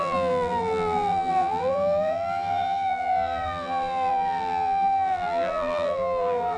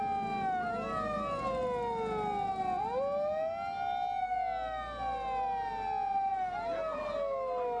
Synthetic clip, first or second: first